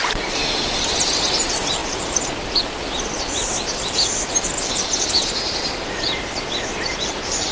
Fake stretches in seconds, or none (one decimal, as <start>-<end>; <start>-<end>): none